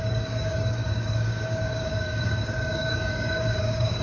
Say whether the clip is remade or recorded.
remade